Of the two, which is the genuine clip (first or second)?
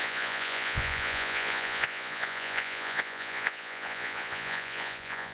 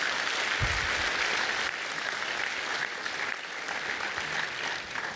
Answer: second